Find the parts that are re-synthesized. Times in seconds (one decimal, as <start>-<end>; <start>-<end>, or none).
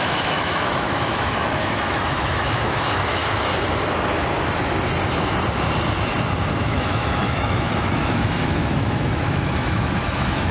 0.0-3.2; 6.6-10.5